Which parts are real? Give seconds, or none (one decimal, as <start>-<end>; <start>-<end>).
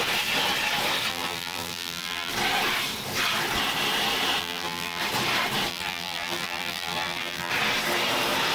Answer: 0.0-1.1; 2.3-4.4; 5.0-5.7; 7.5-8.5